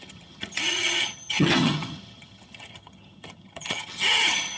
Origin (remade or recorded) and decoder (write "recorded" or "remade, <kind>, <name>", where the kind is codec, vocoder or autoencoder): remade, vocoder, HiFi-GAN